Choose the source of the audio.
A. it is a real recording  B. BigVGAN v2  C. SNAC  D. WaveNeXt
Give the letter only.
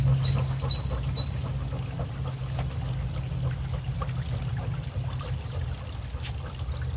A